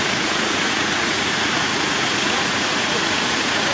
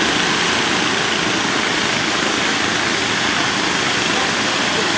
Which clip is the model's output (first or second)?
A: first